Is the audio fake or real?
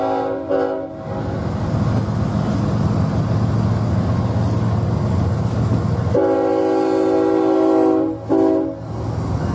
real